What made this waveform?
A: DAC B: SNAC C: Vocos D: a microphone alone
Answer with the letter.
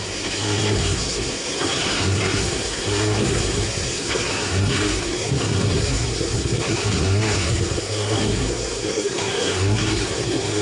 B